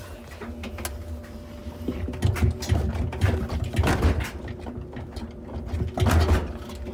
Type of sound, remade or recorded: recorded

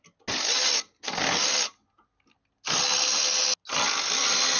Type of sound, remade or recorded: recorded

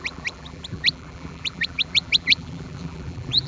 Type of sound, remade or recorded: remade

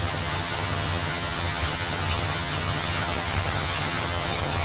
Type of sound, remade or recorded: remade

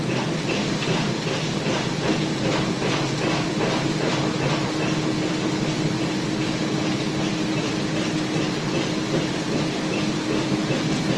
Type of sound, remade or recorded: recorded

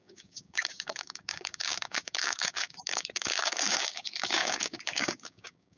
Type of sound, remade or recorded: remade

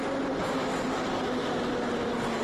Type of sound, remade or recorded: recorded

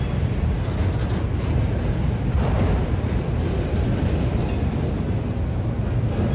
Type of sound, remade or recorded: recorded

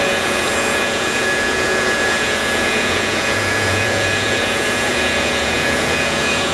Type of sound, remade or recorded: remade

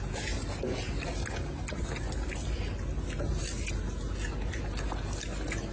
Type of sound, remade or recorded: recorded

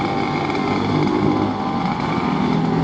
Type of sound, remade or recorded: recorded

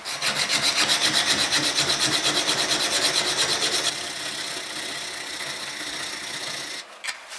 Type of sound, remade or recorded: recorded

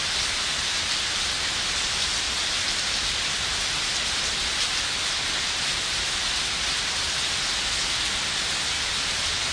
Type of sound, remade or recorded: recorded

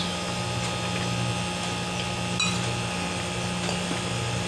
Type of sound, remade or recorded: recorded